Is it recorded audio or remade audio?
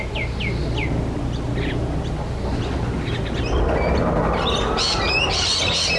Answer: recorded